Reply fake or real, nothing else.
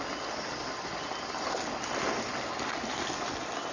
real